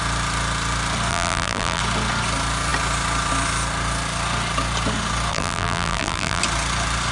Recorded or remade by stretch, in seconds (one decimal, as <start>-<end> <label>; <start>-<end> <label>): 0.0-1.1 recorded; 1.1-1.8 remade; 1.8-5.3 recorded; 5.3-6.4 remade; 6.4-7.1 recorded